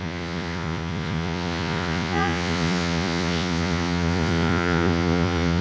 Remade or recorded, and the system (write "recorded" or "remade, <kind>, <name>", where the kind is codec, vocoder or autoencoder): remade, vocoder, Vocos